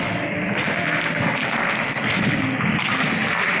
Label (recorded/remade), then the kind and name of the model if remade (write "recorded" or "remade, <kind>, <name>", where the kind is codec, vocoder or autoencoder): recorded